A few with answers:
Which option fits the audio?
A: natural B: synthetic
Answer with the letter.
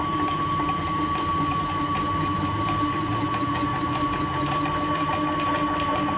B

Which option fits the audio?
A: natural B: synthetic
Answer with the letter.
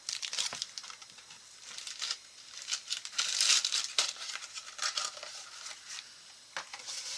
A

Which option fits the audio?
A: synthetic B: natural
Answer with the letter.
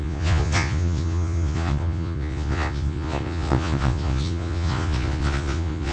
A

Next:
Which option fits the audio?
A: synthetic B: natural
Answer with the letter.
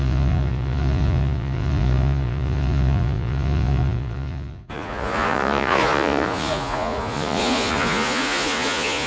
A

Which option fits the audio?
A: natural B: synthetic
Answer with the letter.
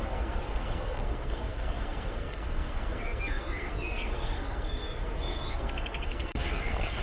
B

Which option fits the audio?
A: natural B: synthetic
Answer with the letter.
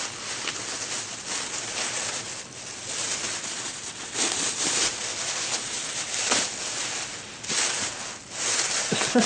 A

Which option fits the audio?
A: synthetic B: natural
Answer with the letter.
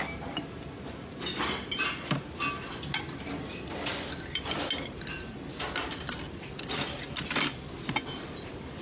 B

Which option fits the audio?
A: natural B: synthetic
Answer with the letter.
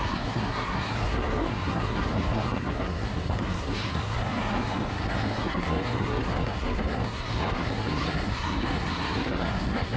B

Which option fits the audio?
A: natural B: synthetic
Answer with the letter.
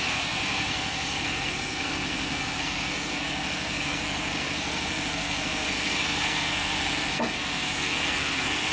B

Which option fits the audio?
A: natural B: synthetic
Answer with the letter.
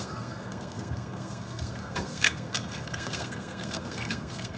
B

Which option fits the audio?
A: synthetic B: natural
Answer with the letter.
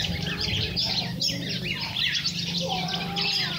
B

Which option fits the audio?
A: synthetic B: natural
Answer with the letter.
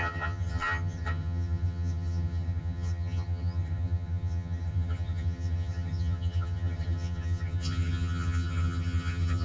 A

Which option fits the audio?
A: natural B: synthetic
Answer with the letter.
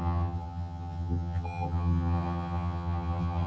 B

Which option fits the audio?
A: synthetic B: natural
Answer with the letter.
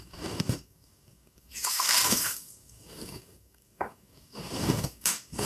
A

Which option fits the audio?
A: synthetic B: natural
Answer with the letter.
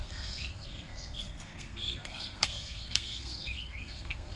A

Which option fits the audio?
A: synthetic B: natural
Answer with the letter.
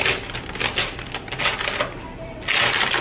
B